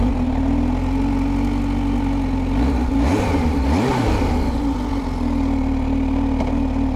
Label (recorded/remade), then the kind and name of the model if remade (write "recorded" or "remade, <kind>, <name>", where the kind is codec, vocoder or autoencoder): recorded